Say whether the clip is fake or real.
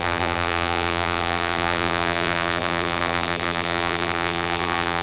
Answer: fake